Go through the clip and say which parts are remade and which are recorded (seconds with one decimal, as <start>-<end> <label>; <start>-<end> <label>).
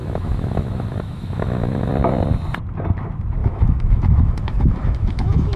0.0-1.9 remade; 1.9-3.4 recorded; 3.4-5.6 remade